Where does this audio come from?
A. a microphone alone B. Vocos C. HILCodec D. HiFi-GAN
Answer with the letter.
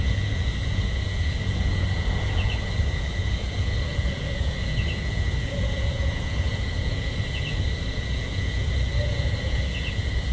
B